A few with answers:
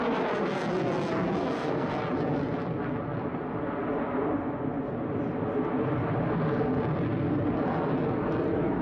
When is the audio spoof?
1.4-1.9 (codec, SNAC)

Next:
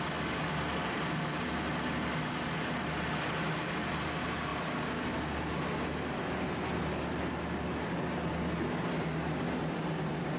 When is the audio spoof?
none

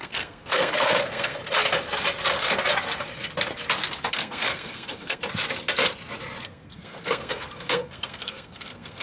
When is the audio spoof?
0.0-1.4 (codec, SNAC); 4.1-5.2; 6.4-9.0

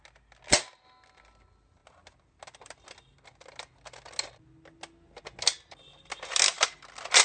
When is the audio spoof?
none

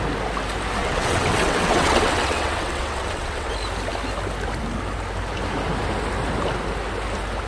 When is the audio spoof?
0.8-3.5 (vocoder, WaveNeXt)

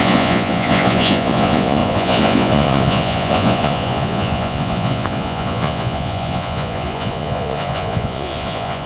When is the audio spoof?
0.0-8.9 (vocoder, Vocos)

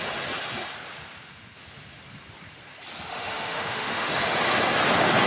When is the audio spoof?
3.1-4.1 (autoencoder, DAC-VAE)